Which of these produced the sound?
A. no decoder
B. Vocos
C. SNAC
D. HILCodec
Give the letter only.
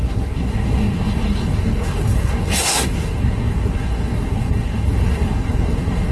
C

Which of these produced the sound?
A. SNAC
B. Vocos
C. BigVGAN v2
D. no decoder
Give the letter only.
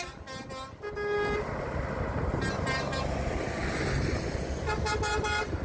D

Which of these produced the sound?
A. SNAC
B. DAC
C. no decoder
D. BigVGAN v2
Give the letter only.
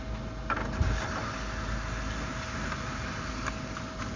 C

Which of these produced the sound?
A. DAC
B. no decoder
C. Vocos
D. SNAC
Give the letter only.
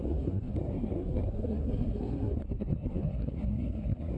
D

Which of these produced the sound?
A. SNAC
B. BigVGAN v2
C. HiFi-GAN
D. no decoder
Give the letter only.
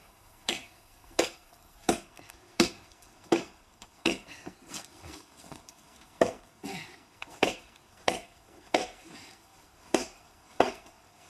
A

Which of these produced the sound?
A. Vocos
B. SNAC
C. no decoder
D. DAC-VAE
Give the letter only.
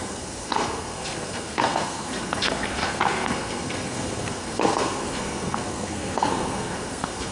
B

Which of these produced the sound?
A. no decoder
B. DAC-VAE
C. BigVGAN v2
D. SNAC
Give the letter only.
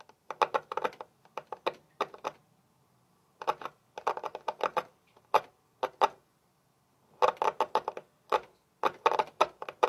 A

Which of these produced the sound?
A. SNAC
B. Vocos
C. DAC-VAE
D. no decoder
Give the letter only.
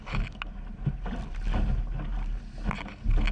D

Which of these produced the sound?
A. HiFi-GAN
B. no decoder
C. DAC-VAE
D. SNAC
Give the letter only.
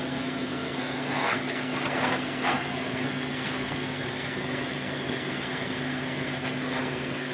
D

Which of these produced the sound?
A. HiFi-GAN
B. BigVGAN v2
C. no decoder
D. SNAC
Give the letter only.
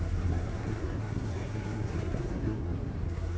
D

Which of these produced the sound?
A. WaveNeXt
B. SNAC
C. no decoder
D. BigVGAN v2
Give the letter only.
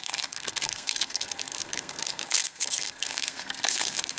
B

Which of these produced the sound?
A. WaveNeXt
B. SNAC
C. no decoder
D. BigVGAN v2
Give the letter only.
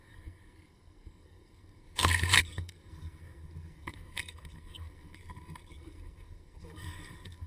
B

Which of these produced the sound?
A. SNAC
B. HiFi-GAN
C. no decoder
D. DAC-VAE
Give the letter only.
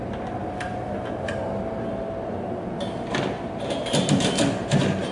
C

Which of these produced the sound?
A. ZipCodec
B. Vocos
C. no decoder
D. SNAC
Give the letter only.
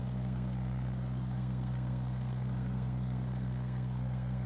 D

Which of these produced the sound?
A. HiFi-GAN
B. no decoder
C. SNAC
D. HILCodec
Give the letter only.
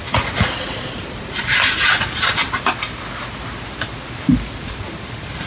B